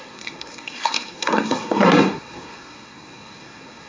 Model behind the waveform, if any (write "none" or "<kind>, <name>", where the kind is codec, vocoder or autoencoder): codec, SNAC